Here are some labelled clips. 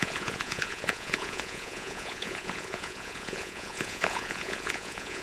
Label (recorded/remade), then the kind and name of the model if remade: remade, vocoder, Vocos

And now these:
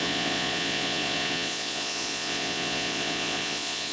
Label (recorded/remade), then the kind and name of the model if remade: remade, vocoder, Vocos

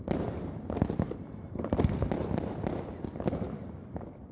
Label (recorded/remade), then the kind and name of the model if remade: recorded